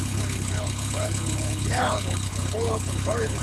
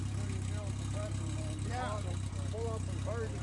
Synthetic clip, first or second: first